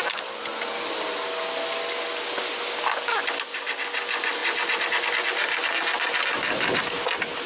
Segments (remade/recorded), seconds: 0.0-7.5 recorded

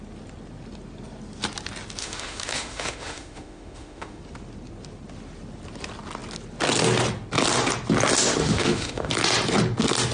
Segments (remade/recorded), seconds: 0.0-2.0 recorded; 2.0-4.2 remade; 4.2-8.4 recorded; 8.4-9.1 remade; 9.1-10.1 recorded

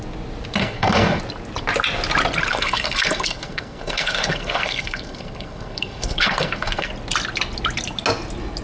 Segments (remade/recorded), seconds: 0.0-0.6 recorded; 0.6-1.2 remade; 1.2-2.5 recorded; 2.5-6.9 remade; 6.9-8.6 recorded

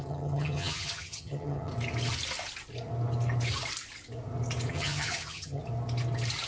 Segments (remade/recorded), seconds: 0.0-1.7 remade; 1.7-4.7 recorded; 4.7-5.6 remade; 5.6-6.5 recorded

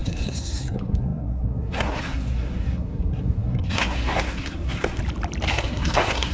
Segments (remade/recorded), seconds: 0.0-5.0 remade; 5.0-5.5 recorded; 5.5-6.3 remade

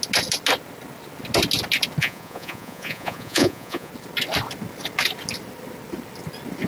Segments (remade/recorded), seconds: 0.0-2.0 recorded; 2.0-3.9 remade; 3.9-6.7 recorded

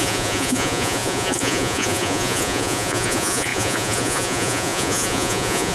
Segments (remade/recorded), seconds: 0.0-5.7 remade